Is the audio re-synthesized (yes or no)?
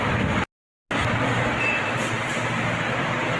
no